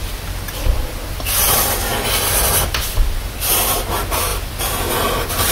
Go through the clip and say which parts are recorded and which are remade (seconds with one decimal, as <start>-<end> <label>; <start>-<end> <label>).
0.0-5.5 recorded

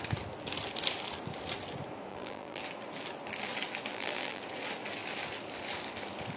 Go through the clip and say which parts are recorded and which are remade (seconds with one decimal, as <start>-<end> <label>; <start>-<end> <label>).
0.0-2.1 recorded; 2.1-2.6 remade; 2.6-3.9 recorded; 3.9-4.4 remade; 4.4-6.4 recorded

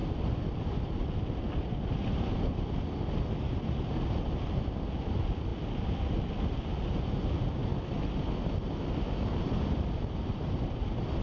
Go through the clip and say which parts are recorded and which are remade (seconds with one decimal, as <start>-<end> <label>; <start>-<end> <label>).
0.0-11.2 recorded

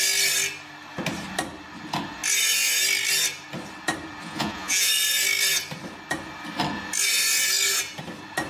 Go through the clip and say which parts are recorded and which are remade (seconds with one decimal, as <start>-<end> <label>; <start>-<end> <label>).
0.0-4.2 recorded; 4.2-4.9 remade; 4.9-8.5 recorded